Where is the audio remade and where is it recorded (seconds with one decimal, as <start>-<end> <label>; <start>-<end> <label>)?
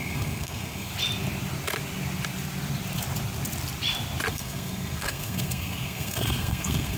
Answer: 0.0-0.9 remade; 0.9-4.3 recorded; 4.3-7.0 remade